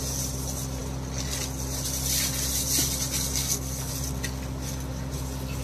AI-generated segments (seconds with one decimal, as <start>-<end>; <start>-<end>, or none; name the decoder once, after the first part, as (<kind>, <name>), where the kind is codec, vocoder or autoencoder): 3.4-3.9 (codec, SNAC)